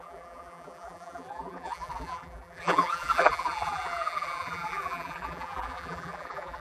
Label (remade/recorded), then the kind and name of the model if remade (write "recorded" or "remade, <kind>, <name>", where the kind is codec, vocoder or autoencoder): remade, vocoder, BigVGAN v2